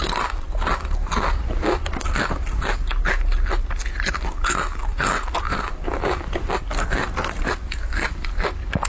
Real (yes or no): yes